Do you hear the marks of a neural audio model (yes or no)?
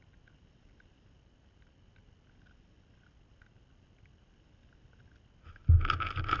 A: no